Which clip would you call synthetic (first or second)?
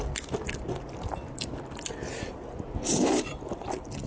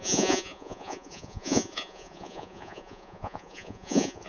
second